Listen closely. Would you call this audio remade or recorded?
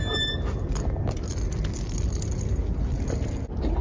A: recorded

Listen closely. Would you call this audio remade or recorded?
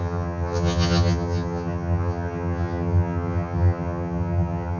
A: remade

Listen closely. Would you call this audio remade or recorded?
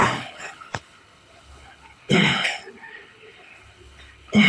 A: remade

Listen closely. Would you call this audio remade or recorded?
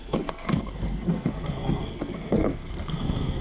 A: remade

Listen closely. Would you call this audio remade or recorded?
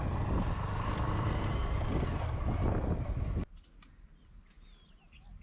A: recorded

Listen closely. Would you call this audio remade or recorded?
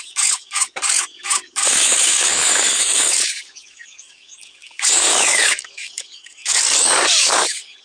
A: remade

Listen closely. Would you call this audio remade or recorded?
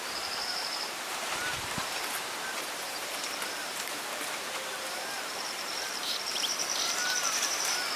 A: remade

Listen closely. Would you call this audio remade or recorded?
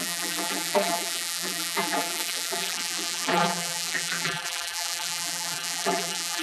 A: remade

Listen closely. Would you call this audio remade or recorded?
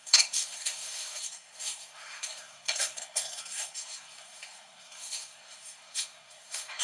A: remade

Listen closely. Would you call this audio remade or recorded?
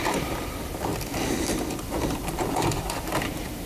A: remade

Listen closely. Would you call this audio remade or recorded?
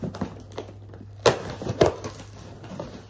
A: recorded